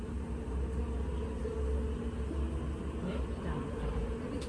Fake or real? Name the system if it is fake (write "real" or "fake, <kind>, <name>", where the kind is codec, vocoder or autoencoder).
real